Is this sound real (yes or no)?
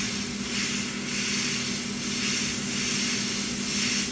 yes